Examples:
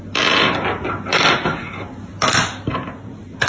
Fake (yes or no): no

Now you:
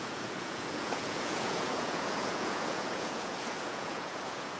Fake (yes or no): yes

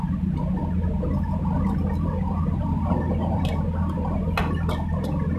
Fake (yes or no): no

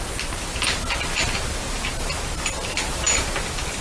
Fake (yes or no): no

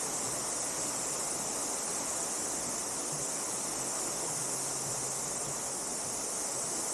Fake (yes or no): no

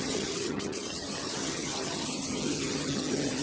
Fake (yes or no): yes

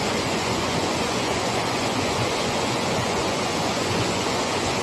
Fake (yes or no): yes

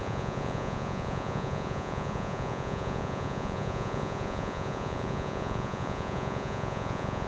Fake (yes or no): yes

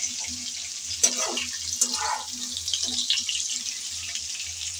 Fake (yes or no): no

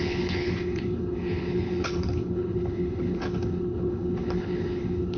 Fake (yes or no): yes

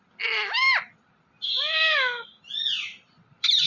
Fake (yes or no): no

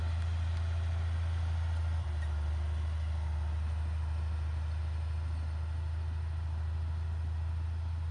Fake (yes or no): no